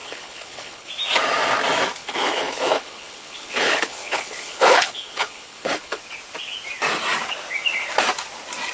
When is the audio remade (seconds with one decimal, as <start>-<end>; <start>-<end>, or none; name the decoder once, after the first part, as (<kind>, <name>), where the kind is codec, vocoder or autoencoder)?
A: 0.0-0.9 (codec, HILCodec); 2.0-6.0